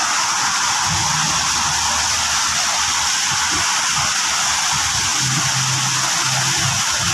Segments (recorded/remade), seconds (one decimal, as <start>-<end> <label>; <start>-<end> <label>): 0.0-7.1 recorded